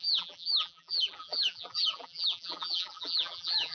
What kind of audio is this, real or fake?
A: fake